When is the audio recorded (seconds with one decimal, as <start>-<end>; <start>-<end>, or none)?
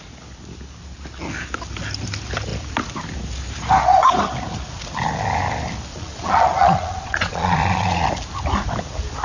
0.0-5.9; 8.1-9.2